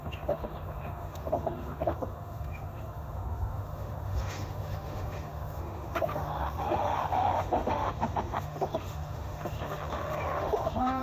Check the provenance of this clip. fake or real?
fake